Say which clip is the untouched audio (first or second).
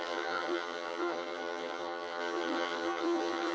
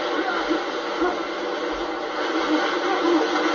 second